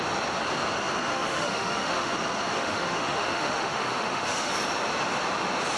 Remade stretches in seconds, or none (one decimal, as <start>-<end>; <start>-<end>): 1.1-2.1; 2.5-4.5